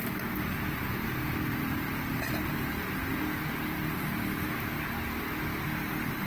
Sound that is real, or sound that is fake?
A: real